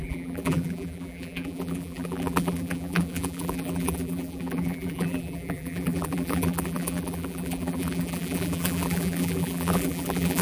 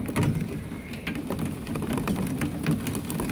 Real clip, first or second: second